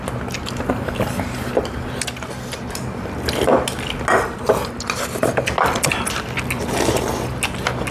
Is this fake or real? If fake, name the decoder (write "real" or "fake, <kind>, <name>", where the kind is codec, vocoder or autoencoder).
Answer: real